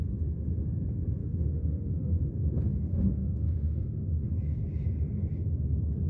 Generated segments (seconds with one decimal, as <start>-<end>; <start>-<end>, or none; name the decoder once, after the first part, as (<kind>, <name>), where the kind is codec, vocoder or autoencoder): 1.2-2.3 (autoencoder, DAC-VAE); 2.9-4.3